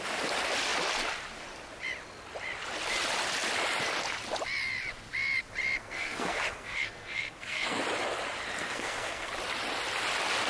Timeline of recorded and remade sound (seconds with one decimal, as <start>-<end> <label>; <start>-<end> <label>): 0.0-5.8 recorded; 5.8-7.8 remade; 7.8-8.6 recorded; 8.6-9.3 remade; 9.3-10.5 recorded